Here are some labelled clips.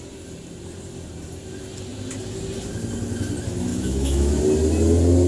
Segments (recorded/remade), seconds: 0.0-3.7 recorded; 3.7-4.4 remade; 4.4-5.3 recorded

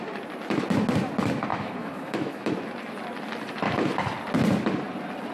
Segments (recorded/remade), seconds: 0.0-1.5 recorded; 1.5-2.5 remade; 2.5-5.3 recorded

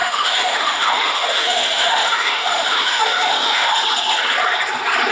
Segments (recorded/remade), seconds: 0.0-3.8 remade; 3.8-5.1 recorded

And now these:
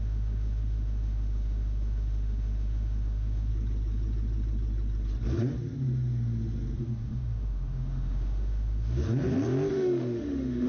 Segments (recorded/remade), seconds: 0.0-3.5 remade; 3.5-6.8 recorded; 6.8-9.0 remade; 9.0-9.7 recorded; 9.7-10.7 remade